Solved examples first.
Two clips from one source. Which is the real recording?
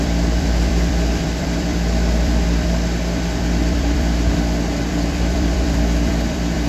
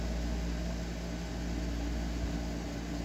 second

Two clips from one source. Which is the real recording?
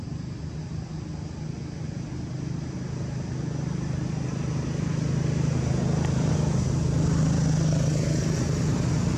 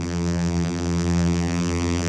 first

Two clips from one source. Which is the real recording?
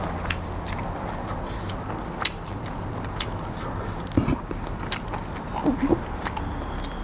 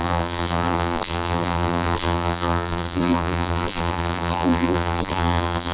first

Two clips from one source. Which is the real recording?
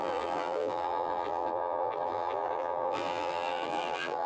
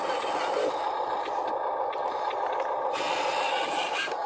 second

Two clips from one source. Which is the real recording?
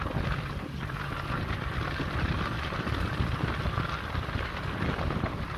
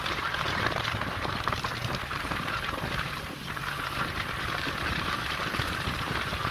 first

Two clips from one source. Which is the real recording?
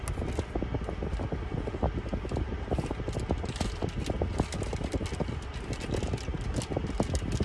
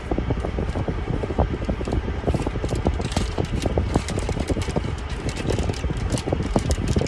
first